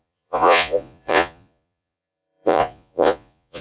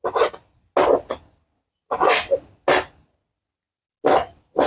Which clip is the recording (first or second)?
second